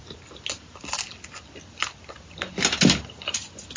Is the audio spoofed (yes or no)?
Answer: no